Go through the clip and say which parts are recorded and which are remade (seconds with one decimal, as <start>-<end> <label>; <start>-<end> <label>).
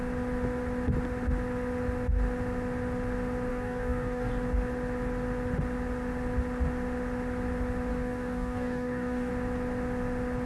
0.0-3.5 recorded; 3.5-4.3 remade; 4.3-7.9 recorded; 7.9-9.3 remade; 9.3-10.5 recorded